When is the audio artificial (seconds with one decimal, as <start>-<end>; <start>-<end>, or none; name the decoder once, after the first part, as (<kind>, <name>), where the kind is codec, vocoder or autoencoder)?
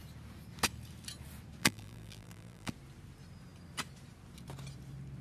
1.6-2.7 (vocoder, BigVGAN v2)